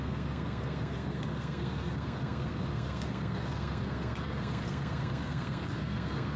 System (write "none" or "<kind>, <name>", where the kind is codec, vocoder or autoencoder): codec, SNAC